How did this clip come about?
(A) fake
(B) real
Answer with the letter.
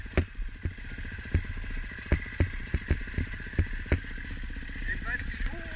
B